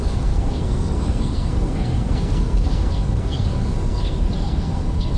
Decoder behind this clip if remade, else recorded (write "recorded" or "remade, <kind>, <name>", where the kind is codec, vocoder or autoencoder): remade, codec, SNAC